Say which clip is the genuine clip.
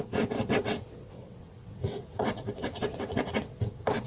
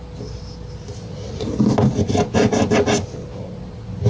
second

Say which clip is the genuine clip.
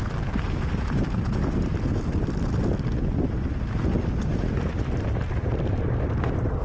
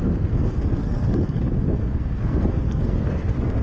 first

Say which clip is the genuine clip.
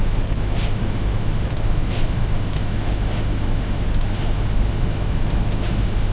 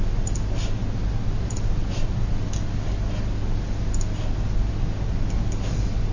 second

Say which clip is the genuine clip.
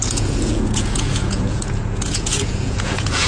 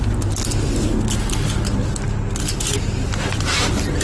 second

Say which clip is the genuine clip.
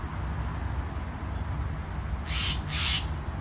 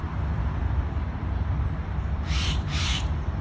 first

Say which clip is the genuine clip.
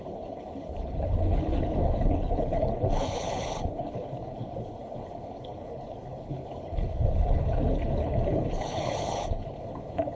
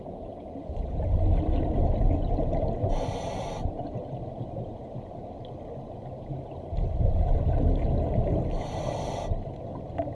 second